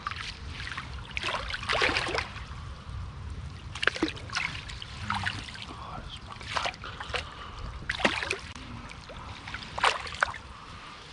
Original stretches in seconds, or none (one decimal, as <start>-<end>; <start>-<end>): 0.0-1.7; 4.1-11.1